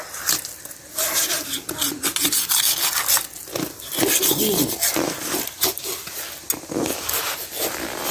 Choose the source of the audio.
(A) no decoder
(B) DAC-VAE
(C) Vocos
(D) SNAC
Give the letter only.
A